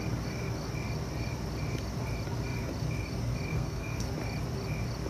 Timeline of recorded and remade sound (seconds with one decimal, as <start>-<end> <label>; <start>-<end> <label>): 0.0-3.5 recorded; 3.5-4.1 remade; 4.1-5.1 recorded